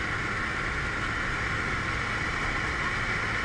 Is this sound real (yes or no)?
yes